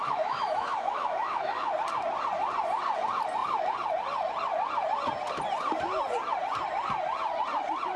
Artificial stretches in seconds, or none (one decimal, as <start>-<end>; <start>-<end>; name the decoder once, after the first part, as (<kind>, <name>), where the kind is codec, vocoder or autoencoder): 0.0-1.7 (autoencoder, DAC-VAE)

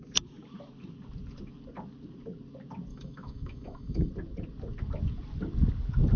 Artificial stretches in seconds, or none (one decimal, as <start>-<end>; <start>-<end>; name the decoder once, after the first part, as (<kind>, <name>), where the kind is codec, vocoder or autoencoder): 2.9-4.1 (autoencoder, DAC-VAE)

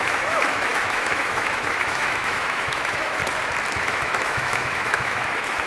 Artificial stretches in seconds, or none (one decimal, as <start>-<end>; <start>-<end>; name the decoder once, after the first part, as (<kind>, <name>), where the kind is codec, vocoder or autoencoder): 0.0-3.2 (autoencoder, DAC-VAE); 3.8-5.7

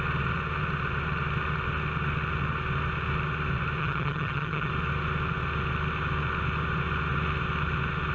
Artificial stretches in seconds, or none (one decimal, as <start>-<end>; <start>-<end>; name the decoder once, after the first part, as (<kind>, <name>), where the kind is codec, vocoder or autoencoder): 3.8-4.7 (vocoder, HiFi-GAN)